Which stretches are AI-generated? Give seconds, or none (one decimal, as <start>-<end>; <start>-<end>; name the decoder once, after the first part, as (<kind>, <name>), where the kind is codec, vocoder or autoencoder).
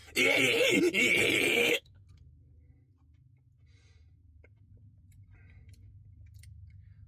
1.6-2.1 (codec, SNAC)